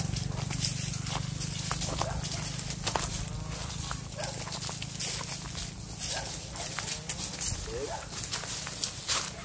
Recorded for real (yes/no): yes